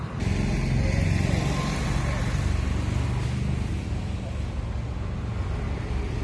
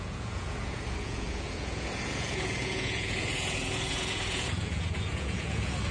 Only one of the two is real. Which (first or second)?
first